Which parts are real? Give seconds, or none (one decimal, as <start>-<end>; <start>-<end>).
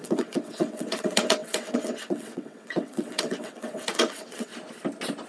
4.5-5.3